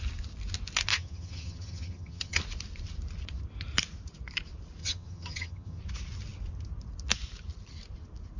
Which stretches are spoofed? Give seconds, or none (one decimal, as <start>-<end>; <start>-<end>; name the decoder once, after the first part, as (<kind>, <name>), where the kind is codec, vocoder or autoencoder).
0.9-2.4 (vocoder, HiFi-GAN); 4.8-5.8